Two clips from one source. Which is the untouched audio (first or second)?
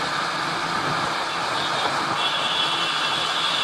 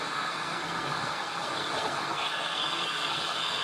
first